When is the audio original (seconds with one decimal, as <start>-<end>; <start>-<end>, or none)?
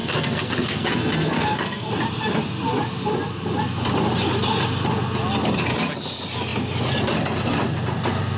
1.9-8.4